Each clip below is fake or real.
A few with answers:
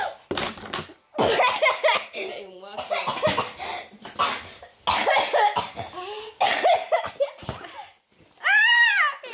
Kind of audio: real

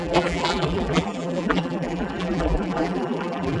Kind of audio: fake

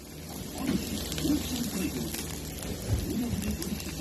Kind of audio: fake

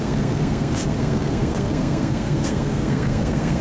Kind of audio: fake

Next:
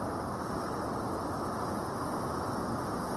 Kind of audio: real